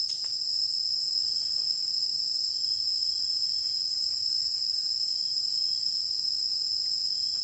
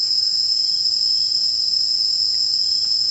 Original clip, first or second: first